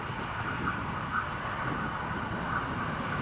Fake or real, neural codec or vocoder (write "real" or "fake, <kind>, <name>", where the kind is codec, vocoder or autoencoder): real